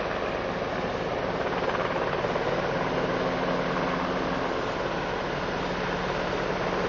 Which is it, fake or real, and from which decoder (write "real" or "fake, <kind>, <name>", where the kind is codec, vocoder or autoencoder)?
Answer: real